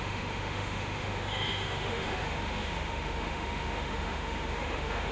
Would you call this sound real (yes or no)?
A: no